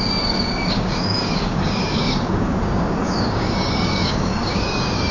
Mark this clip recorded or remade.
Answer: remade